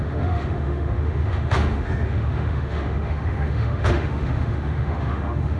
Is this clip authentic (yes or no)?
no